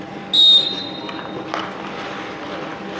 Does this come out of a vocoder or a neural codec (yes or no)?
no